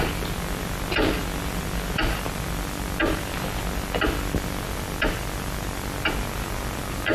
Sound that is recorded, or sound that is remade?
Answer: recorded